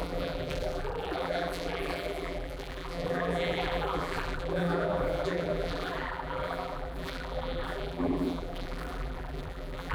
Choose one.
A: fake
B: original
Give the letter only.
A